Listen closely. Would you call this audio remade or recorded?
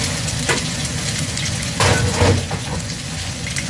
remade